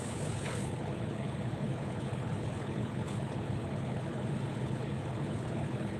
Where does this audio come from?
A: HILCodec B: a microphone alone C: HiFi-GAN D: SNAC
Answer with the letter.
A